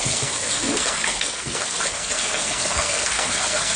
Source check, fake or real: fake